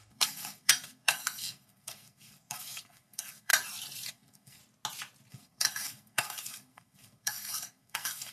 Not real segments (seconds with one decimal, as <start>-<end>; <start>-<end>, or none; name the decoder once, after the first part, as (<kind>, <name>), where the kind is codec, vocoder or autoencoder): 0.0-3.5 (codec, SNAC); 4.1-4.6; 5.3-8.3